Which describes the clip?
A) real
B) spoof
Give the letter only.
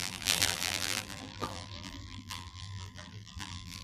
B